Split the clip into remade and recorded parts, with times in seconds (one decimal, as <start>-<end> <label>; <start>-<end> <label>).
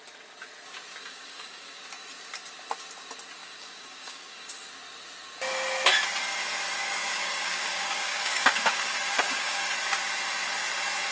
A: 0.0-1.0 recorded; 1.0-1.8 remade; 1.8-3.4 recorded; 3.4-4.7 remade; 4.7-6.8 recorded; 6.8-9.7 remade; 9.7-11.1 recorded